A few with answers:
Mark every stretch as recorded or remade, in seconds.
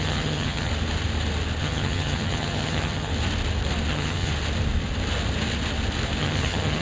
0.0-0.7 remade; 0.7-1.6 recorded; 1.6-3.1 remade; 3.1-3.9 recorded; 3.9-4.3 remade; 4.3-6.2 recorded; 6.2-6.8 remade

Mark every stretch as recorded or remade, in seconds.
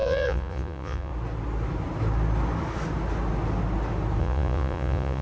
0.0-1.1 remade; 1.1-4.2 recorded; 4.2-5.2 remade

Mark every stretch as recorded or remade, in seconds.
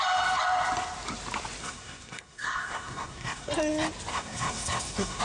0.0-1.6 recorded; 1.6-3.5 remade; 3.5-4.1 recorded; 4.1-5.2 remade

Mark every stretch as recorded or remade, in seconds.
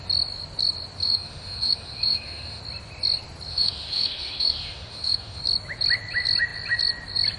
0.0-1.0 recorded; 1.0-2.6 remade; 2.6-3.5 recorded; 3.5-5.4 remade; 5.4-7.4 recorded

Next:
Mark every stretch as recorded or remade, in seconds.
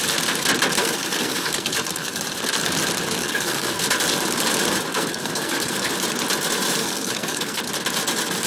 0.0-0.8 recorded; 0.8-2.2 remade; 2.2-3.2 recorded; 3.2-3.8 remade; 3.8-4.9 recorded; 4.9-5.9 remade; 5.9-6.8 recorded; 6.8-7.6 remade; 7.6-8.5 recorded